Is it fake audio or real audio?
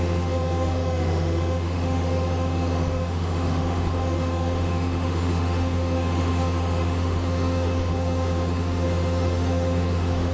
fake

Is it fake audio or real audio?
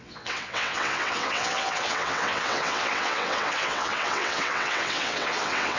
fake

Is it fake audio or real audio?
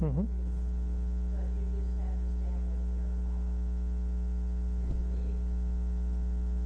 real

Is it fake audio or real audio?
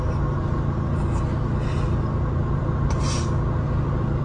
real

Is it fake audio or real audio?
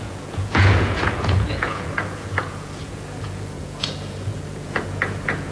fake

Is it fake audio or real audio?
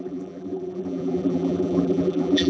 fake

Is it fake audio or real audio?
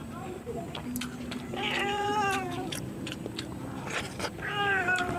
fake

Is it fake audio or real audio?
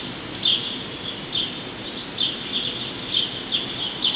real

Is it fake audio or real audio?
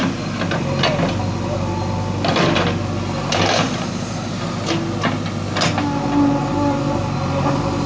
real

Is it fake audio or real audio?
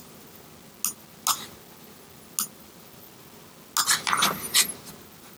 real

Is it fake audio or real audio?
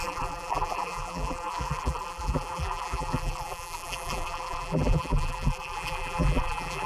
fake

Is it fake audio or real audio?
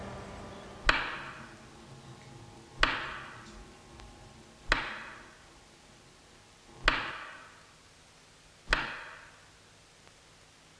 real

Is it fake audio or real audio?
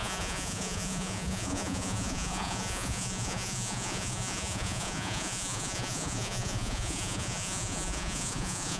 fake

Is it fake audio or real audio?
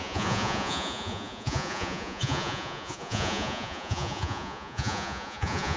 fake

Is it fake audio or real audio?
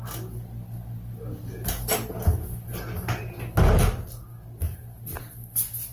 real